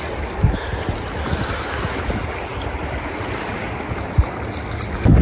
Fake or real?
real